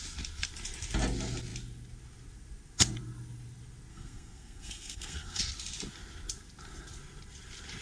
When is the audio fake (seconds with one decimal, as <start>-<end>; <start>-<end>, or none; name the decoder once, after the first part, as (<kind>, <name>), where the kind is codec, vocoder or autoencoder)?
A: 3.9-5.4 (codec, SNAC)